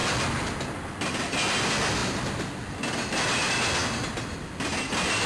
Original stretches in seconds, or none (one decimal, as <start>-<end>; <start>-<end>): 0.0-5.3